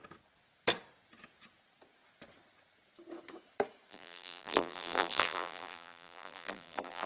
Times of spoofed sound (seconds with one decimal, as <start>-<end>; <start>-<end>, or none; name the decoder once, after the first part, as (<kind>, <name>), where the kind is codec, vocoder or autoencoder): 3.9-7.1 (vocoder, BigVGAN v2)